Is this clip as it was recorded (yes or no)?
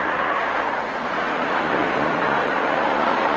no